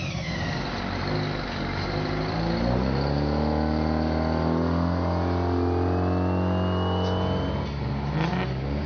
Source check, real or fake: real